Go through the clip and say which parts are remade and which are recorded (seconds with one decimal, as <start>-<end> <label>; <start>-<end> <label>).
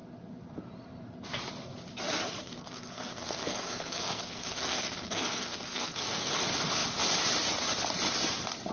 0.0-2.4 recorded; 2.4-6.3 remade; 6.3-8.7 recorded